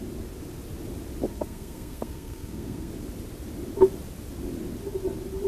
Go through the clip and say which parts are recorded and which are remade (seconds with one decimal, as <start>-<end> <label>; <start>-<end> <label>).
0.0-1.3 recorded; 1.3-2.9 remade; 2.9-5.5 recorded